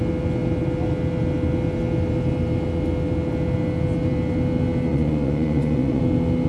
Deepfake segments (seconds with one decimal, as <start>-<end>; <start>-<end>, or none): 4.9-6.0